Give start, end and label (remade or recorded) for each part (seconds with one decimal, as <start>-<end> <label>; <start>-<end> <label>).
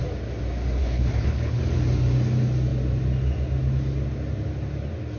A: 0.0-0.8 recorded; 0.8-1.6 remade; 1.6-5.2 recorded